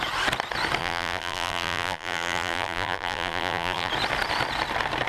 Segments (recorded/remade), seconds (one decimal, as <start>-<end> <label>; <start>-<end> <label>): 0.0-0.8 recorded; 0.8-3.9 remade; 3.9-5.1 recorded